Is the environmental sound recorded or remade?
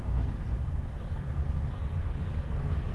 remade